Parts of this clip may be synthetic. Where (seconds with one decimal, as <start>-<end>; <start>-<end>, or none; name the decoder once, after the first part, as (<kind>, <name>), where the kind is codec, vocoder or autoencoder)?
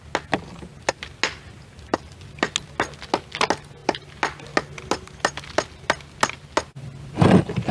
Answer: none